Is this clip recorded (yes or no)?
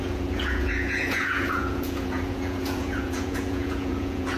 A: no